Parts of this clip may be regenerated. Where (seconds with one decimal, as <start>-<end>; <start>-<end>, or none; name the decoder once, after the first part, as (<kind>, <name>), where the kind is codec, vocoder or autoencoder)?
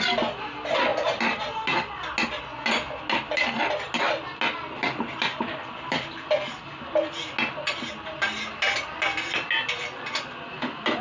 none